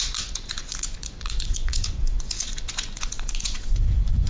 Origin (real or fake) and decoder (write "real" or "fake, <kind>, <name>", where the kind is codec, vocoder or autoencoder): fake, vocoder, Vocos